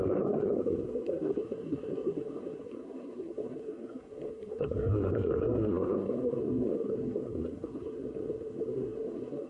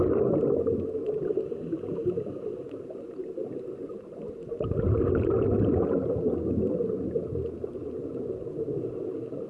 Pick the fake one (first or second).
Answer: first